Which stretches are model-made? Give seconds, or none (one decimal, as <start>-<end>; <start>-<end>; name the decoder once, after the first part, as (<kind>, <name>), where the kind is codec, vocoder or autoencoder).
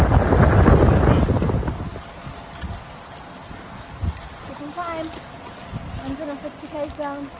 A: none